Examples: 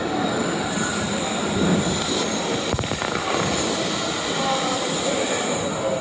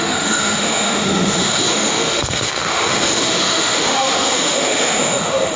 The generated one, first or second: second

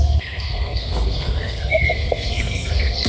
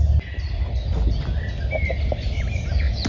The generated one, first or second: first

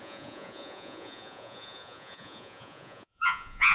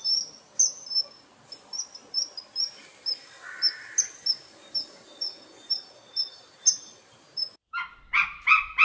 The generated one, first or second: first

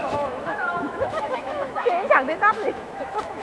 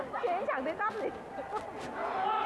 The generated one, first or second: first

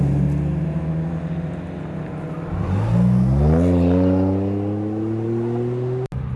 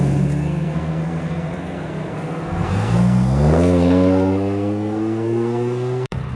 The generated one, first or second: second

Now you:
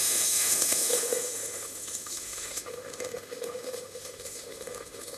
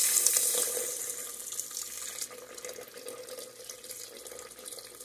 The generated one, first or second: first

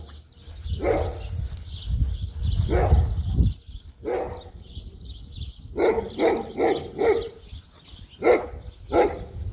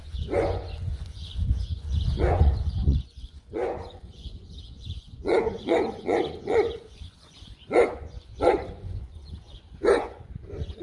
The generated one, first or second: second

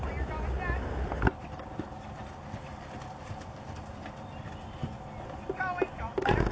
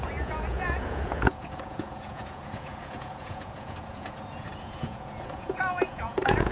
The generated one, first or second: second